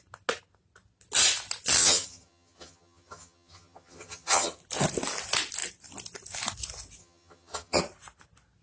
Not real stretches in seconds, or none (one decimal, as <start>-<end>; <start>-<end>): 1.8-4.6; 7.0-7.8